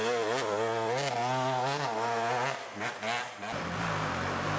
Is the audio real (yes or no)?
yes